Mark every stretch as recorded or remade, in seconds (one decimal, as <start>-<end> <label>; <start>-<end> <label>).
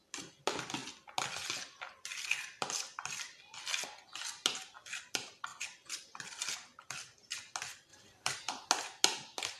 0.0-5.5 recorded; 5.5-6.4 remade; 6.4-7.9 recorded; 7.9-8.7 remade; 8.7-9.6 recorded